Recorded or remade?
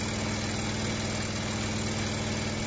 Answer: recorded